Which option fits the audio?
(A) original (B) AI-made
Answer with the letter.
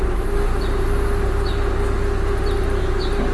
A